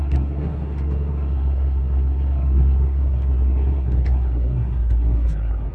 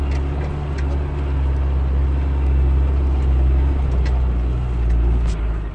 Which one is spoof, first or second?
first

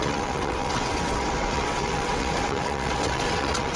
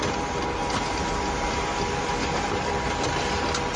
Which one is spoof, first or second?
first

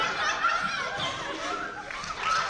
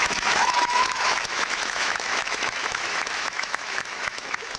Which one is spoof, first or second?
second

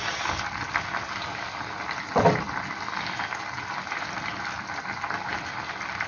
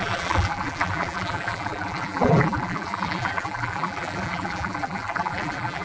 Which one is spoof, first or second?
second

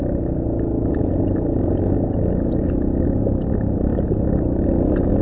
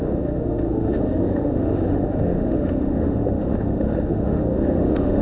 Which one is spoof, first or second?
second